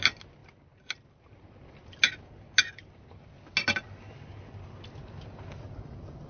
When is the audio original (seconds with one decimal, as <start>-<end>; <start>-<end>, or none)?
0.0-6.3